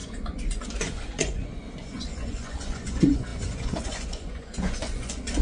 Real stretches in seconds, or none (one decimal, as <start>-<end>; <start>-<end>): none